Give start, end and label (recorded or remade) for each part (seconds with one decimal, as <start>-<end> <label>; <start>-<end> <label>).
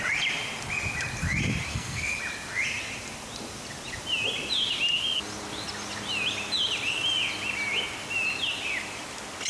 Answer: 0.0-1.7 recorded; 1.7-2.2 remade; 2.2-9.5 recorded